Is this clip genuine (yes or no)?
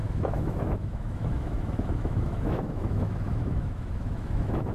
no